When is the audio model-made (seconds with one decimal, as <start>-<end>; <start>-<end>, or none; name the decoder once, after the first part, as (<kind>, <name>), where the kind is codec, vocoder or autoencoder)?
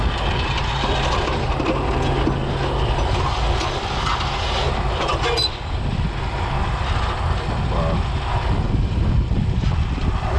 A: none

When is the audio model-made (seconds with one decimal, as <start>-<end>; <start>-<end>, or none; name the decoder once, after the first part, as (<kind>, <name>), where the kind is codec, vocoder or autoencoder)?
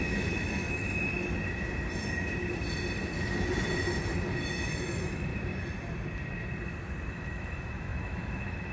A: 0.0-1.1 (autoencoder, DAC-VAE); 4.3-5.3; 7.1-8.7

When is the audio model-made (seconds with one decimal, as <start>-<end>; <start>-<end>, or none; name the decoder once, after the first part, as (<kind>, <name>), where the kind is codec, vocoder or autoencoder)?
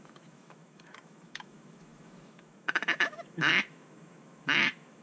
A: 0.0-5.0 (autoencoder, DAC-VAE)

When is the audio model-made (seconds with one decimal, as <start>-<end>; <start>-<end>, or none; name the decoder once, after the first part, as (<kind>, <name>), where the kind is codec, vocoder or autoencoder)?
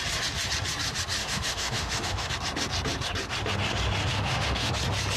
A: 1.2-2.3 (autoencoder, DAC-VAE); 4.1-4.7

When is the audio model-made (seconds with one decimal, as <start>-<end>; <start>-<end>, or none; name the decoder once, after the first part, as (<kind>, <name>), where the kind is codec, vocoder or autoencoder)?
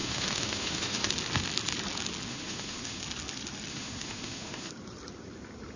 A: 0.0-1.1 (autoencoder, DAC-VAE); 2.3-3.0; 3.7-4.7